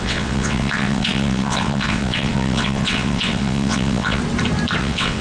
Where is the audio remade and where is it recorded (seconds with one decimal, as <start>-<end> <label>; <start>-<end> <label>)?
0.0-4.2 remade; 4.2-4.8 recorded; 4.8-5.2 remade

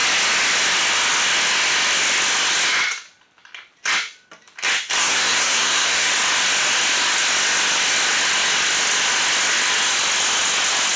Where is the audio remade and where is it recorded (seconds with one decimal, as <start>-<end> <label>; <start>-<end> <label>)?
0.0-5.0 recorded; 5.0-6.1 remade; 6.1-11.0 recorded

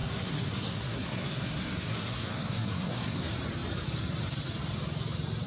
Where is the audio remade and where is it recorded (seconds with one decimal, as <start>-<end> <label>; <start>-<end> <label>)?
0.0-3.2 remade; 3.2-5.5 recorded

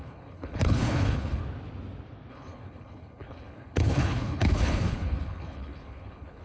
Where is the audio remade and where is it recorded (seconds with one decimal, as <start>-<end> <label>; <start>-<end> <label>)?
0.0-1.4 remade; 1.4-2.3 recorded; 2.3-6.4 remade

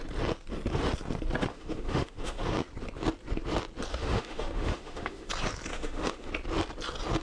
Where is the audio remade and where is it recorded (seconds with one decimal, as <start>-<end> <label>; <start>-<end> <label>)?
0.0-1.5 recorded; 1.5-2.4 remade; 2.4-3.9 recorded; 3.9-5.3 remade; 5.3-5.7 recorded; 5.7-6.3 remade; 6.3-7.2 recorded

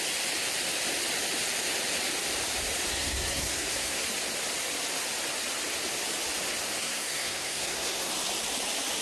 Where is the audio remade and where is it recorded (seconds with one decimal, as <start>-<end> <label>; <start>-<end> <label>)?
0.0-2.9 recorded; 2.9-4.0 remade; 4.0-6.8 recorded; 6.8-8.1 remade; 8.1-9.0 recorded